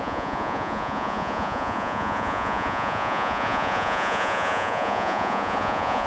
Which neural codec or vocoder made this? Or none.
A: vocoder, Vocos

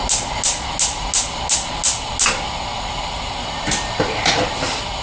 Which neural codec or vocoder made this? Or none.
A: none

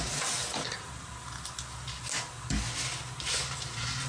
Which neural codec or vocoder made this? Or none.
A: none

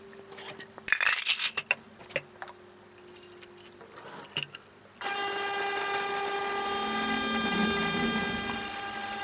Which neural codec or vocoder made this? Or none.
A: none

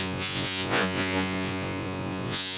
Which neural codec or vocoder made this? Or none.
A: vocoder, Vocos